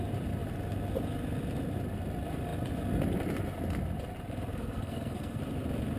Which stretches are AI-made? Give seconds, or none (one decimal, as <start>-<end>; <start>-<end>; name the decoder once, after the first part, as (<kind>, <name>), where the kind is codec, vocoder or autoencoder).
4.5-5.4 (codec, SNAC)

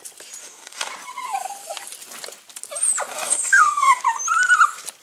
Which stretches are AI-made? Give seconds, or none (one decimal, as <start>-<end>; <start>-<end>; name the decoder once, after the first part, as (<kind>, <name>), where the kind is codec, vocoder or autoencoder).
0.4-0.9 (codec, DAC); 3.1-4.0

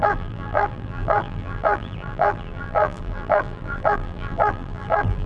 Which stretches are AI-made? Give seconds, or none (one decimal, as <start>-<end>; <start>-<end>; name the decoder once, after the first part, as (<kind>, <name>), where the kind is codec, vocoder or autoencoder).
0.0-5.3 (vocoder, BigVGAN v2)

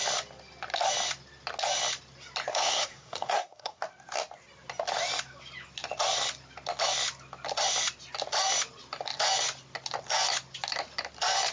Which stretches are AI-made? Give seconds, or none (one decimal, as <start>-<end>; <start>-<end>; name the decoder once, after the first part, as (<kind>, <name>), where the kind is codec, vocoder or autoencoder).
2.5-3.8 (codec, SNAC)

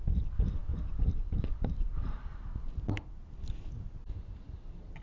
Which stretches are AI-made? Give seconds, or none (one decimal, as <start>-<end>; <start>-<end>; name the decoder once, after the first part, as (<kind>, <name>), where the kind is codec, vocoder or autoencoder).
0.7-2.8 (vocoder, BigVGAN v2)

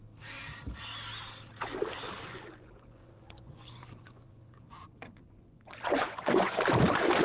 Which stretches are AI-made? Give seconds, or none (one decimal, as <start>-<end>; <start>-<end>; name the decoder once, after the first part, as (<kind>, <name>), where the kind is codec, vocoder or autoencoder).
2.3-6.6 (vocoder, Vocos)

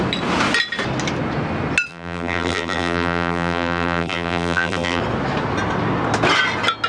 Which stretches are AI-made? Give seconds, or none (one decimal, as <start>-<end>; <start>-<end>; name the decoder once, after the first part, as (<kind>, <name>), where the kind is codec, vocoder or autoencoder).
1.9-5.0 (vocoder, BigVGAN v2)